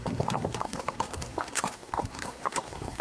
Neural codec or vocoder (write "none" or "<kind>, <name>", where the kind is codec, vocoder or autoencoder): codec, SNAC